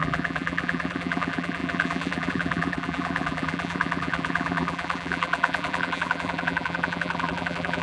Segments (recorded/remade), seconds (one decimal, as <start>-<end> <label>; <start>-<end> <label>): 0.0-7.8 remade